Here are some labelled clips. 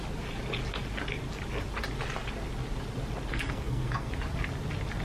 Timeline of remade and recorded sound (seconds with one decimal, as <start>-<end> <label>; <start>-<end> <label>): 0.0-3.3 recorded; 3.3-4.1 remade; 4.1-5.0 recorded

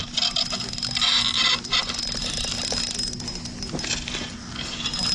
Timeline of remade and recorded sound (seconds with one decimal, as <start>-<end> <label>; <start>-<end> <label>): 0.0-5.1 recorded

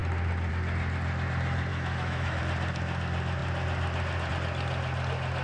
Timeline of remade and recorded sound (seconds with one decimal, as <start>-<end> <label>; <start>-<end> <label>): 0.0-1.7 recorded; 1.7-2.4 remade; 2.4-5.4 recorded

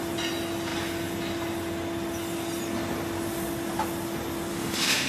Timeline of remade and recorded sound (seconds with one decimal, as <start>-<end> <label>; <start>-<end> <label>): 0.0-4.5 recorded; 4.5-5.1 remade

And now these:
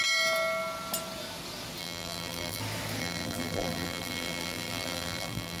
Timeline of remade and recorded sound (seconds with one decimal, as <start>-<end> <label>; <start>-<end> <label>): 0.0-1.8 recorded; 1.8-2.6 remade; 2.6-3.0 recorded; 3.0-5.6 remade

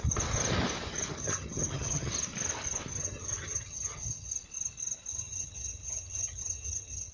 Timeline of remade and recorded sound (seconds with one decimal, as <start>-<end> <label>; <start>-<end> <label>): 0.0-1.2 recorded; 1.2-2.1 remade; 2.1-2.9 recorded; 2.9-4.3 remade; 4.3-5.1 recorded; 5.1-7.1 remade